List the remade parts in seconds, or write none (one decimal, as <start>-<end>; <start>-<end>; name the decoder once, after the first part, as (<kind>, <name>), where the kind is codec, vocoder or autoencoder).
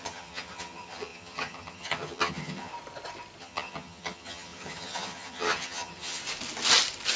0.0-2.7 (vocoder, HiFi-GAN); 3.4-6.2